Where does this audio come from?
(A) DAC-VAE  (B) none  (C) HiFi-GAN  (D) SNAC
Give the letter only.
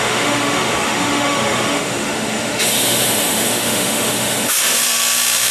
A